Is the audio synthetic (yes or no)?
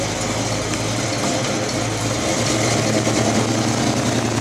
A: no